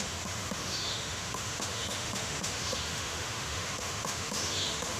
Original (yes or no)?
no